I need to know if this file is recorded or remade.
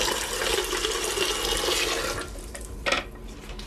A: recorded